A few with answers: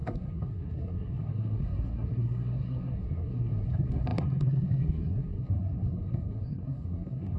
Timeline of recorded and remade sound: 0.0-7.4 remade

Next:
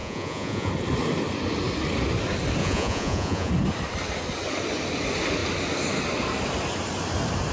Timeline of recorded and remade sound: 0.0-0.7 remade; 0.7-2.6 recorded; 2.6-3.5 remade; 3.5-7.5 recorded

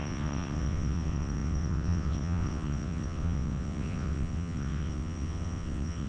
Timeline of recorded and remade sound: 0.0-6.1 remade

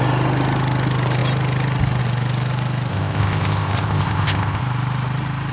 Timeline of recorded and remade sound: 0.0-2.9 recorded; 2.9-4.6 remade; 4.6-5.5 recorded